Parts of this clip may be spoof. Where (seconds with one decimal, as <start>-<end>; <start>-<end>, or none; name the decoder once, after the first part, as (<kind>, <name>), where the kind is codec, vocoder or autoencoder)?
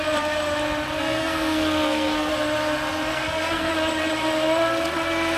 1.0-2.3 (codec, SNAC); 3.1-3.7